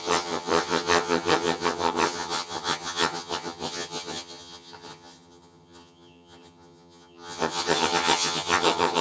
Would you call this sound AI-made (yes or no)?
yes